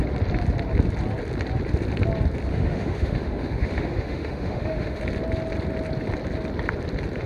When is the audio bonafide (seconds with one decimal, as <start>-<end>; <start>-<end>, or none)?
0.0-2.5; 5.0-7.3